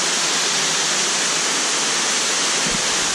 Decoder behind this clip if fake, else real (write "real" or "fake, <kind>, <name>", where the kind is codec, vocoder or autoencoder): real